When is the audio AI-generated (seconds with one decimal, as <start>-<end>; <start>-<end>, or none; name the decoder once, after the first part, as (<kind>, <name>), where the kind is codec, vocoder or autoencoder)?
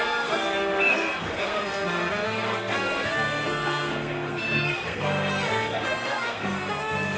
0.0-7.2 (codec, SNAC)